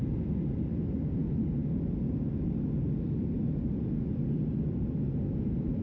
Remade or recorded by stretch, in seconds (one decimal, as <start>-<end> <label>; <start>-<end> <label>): 0.0-1.2 remade; 1.2-4.7 recorded; 4.7-5.8 remade